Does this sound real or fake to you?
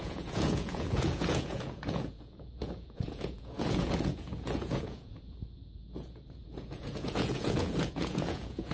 fake